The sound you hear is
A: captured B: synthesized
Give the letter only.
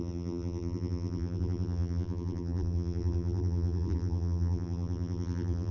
B